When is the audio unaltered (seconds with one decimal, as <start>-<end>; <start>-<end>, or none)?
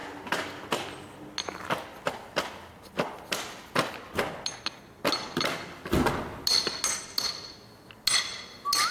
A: 0.0-8.9